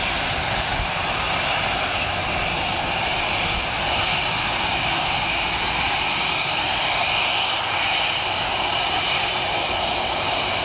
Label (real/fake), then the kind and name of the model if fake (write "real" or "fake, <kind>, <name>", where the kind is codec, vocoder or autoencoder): real